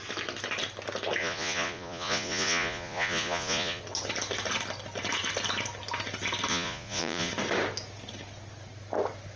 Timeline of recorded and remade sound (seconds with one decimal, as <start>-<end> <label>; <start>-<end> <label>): 0.0-1.2 recorded; 1.2-3.8 remade; 3.8-6.5 recorded; 6.5-7.3 remade; 7.3-9.4 recorded